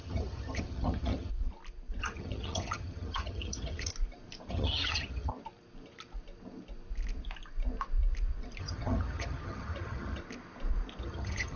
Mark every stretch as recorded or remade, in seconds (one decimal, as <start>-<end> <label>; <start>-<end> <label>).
0.0-1.3 remade; 1.3-2.0 recorded; 2.0-3.9 remade; 3.9-4.5 recorded; 4.5-5.3 remade; 5.3-8.6 recorded; 8.6-10.2 remade; 10.2-11.0 recorded; 11.0-11.6 remade